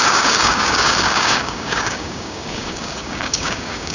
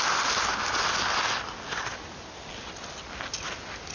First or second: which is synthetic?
first